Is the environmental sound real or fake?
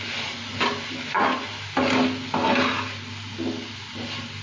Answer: real